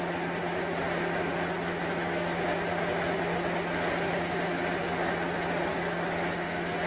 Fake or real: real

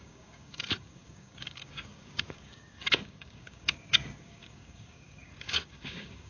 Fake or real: fake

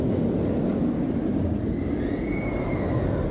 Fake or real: real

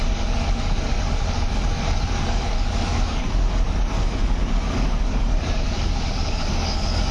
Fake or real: fake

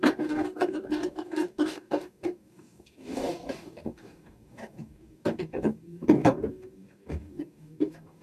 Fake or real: fake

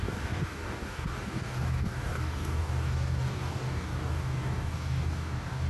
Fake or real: fake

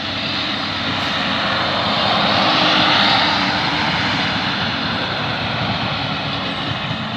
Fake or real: real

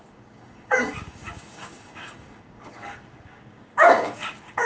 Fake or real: fake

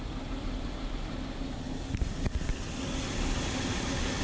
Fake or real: real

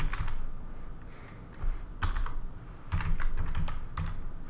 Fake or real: real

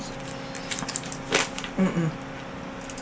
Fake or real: real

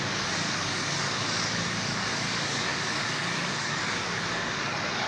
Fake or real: fake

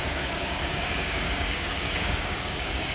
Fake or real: fake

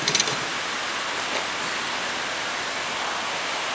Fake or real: real